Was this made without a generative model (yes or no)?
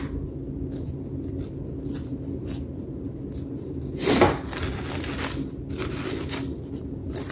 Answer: yes